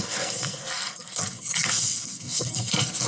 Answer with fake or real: fake